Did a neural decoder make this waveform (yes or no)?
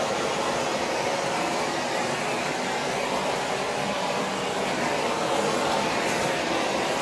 no